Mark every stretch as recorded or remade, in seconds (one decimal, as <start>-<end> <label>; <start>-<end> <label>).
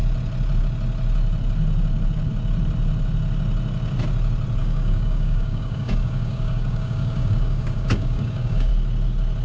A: 0.0-4.6 recorded; 4.6-8.7 remade; 8.7-9.4 recorded